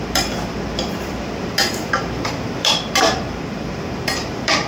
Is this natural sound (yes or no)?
no